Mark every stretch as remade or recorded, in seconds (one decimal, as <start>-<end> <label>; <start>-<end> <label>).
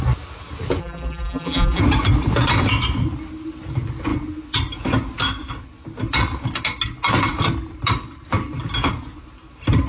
0.0-0.8 recorded; 0.8-1.8 remade; 1.8-9.9 recorded